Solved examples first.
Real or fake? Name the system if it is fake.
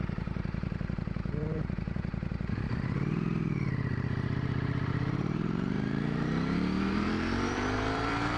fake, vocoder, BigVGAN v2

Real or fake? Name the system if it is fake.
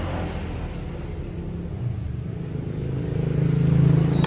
real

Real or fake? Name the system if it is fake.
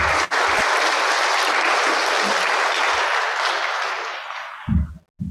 real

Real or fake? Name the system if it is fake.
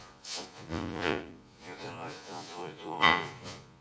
fake, vocoder, Vocos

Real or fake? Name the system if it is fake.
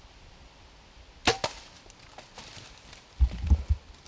real